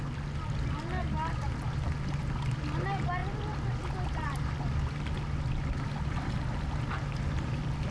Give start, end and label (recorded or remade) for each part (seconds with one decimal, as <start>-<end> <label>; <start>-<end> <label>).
0.0-7.9 recorded